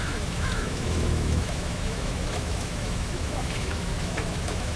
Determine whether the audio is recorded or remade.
remade